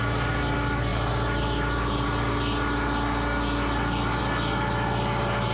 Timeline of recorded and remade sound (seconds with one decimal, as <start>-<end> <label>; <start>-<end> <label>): 0.0-5.5 recorded